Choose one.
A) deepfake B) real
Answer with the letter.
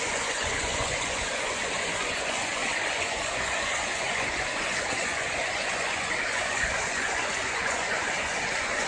A